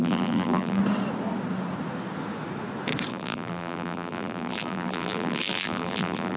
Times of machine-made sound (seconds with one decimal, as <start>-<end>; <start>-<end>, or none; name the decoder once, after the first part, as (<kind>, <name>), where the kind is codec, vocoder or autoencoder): 0.0-0.8 (vocoder, BigVGAN v2); 3.1-6.4